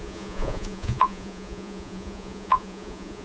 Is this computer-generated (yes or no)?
yes